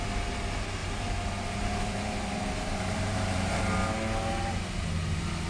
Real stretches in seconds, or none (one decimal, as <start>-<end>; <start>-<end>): 0.0-0.8; 3.6-5.5